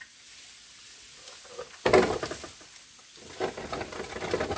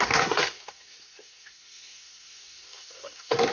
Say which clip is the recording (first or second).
first